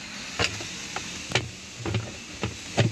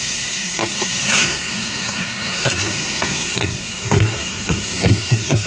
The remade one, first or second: second